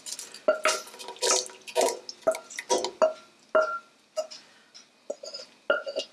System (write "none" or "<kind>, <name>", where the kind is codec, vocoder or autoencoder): none